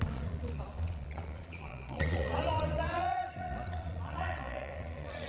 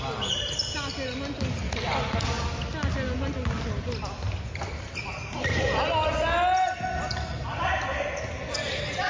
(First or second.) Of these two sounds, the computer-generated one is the first